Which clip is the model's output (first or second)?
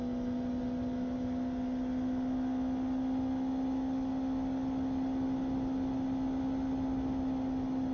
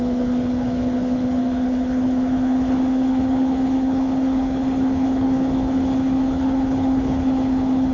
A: second